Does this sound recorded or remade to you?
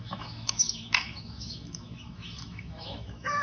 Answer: remade